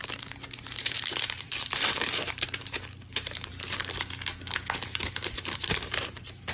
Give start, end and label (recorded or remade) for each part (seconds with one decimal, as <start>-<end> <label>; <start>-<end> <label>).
0.0-3.5 remade; 3.5-5.3 recorded; 5.3-6.5 remade